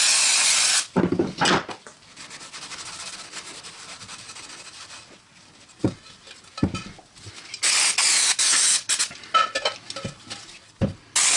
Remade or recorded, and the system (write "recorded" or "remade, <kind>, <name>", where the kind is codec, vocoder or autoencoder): recorded